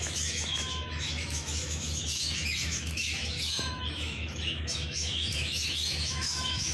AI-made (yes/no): yes